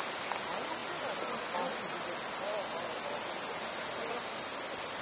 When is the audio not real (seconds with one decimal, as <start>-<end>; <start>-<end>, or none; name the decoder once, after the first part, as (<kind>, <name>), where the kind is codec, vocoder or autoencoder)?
none